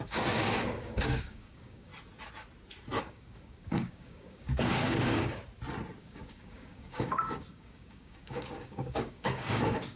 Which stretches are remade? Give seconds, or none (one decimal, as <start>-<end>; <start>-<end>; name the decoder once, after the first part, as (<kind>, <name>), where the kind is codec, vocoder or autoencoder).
0.0-1.9 (codec, DAC); 3.0-5.4; 6.0-10.0